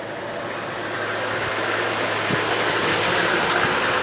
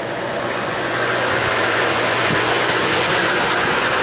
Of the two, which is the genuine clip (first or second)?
first